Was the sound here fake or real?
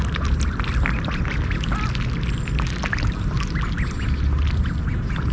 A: real